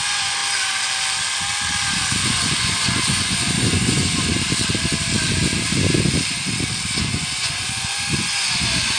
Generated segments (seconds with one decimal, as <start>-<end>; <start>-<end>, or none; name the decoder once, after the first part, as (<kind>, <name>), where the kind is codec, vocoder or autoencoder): 0.0-0.4 (vocoder, Vocos); 2.2-4.3; 7.0-9.0